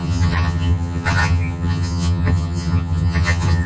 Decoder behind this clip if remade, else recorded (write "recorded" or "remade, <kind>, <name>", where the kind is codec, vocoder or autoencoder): remade, vocoder, HiFi-GAN